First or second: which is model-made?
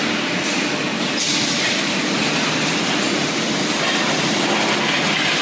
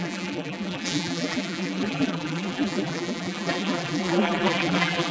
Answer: second